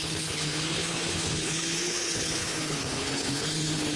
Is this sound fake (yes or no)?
yes